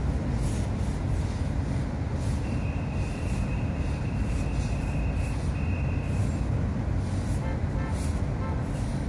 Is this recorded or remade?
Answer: recorded